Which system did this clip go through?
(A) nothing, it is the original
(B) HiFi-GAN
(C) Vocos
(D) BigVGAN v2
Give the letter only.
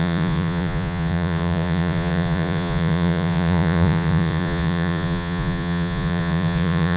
C